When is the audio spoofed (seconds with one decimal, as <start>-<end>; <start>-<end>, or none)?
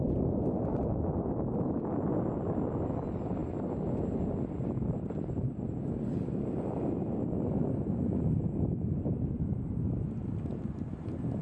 none